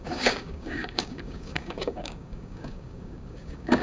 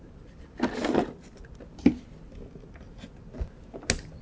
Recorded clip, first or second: second